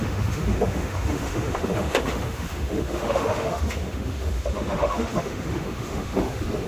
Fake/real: fake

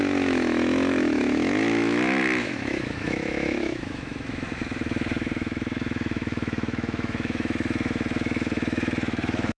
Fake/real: fake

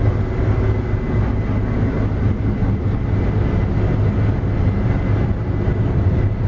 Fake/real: real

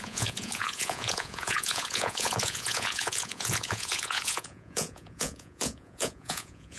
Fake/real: fake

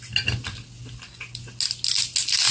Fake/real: real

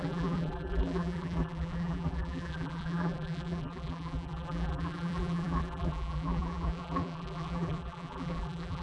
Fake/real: fake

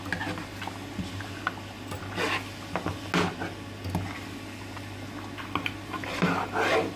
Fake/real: real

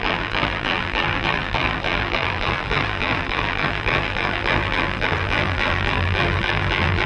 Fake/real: fake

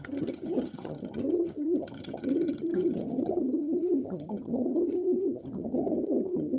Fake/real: fake